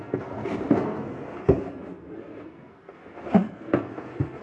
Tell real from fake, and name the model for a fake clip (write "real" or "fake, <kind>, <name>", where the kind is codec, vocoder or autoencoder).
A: fake, codec, SNAC